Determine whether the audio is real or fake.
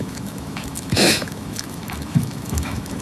fake